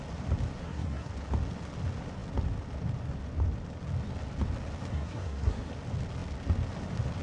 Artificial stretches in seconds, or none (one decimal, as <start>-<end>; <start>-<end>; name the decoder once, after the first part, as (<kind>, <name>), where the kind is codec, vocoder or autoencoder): 0.6-1.1 (codec, SNAC); 4.9-5.7